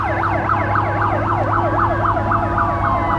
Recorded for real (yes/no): yes